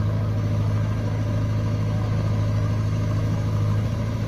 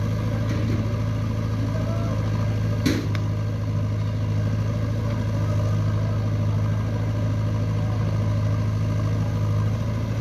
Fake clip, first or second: first